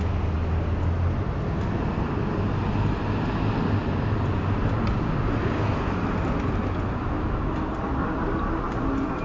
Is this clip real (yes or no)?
yes